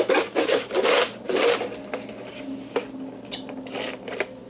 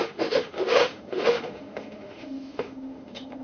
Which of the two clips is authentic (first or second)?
first